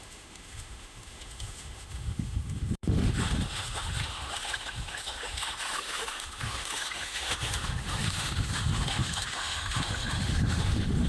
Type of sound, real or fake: fake